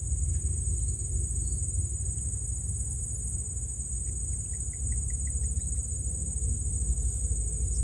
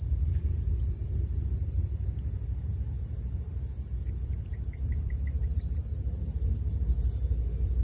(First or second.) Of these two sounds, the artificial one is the second